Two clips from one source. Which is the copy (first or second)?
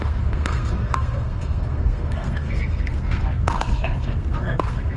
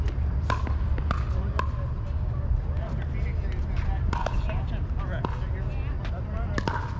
first